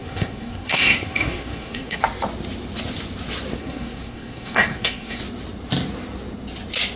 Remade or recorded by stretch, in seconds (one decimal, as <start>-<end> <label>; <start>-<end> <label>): 0.0-2.0 remade; 2.0-3.6 recorded; 3.6-5.2 remade; 5.2-7.0 recorded